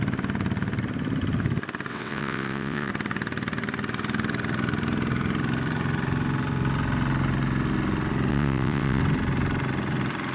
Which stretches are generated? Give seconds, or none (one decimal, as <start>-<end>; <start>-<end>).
1.9-2.9; 8.3-9.0